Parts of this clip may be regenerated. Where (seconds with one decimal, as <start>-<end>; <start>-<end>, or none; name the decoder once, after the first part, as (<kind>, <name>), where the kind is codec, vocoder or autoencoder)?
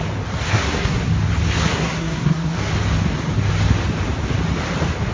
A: 0.5-1.1 (codec, SNAC); 1.7-2.7